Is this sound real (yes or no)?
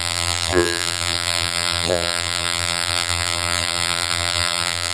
no